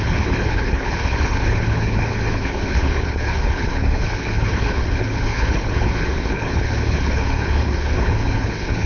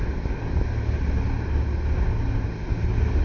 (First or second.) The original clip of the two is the second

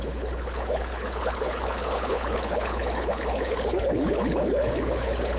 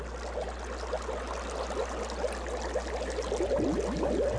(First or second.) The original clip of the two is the second